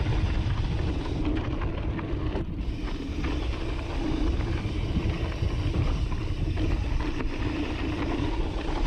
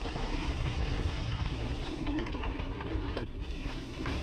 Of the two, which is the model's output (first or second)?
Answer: second